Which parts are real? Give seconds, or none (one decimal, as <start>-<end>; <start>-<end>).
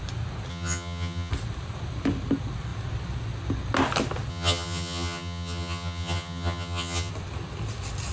0.0-0.5; 1.3-4.3; 7.1-8.1